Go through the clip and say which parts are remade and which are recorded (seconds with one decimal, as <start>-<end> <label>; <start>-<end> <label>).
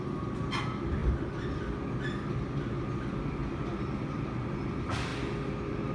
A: 0.0-3.4 recorded; 3.4-4.4 remade; 4.4-5.9 recorded